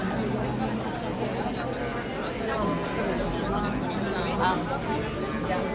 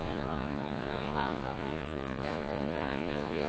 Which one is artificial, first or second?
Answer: second